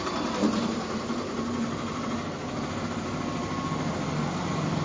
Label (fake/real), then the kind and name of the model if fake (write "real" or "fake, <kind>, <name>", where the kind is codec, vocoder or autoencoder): real